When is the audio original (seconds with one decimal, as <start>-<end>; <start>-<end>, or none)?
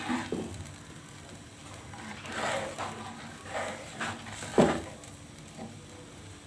0.0-1.6; 2.3-4.5